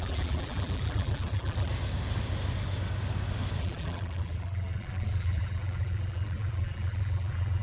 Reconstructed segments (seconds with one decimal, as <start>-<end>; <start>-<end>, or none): 0.0-1.7; 3.6-7.6

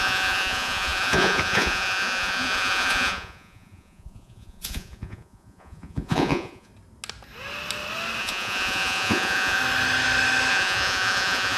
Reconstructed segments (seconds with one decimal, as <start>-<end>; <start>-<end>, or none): 0.0-6.7; 8.2-9.6; 10.5-11.6

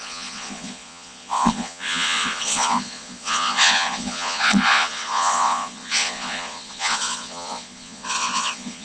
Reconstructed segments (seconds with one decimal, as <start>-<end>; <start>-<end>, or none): 0.0-8.8

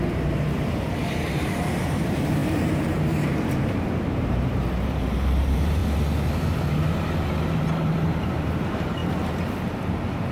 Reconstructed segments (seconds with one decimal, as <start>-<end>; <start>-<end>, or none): 0.0-5.8; 7.6-9.0; 9.7-10.3

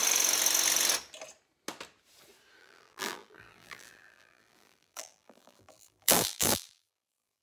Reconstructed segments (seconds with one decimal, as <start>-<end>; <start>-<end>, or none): 2.6-7.4

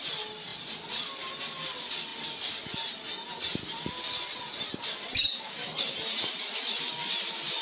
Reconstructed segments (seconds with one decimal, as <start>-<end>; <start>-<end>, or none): none

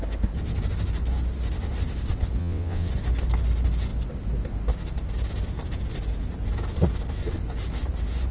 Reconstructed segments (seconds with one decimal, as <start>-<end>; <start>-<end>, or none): 2.4-2.9